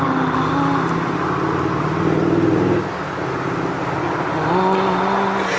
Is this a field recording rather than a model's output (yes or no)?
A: yes